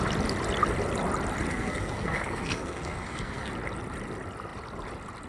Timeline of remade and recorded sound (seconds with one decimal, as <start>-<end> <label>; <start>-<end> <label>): 0.0-1.5 recorded; 1.5-3.5 remade; 3.5-5.3 recorded